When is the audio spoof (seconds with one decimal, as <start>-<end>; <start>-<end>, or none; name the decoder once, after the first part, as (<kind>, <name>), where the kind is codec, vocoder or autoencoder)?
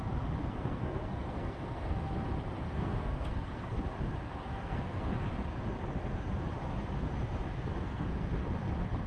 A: 0.4-2.1 (codec, SNAC); 2.7-3.7; 4.5-5.1; 7.8-8.3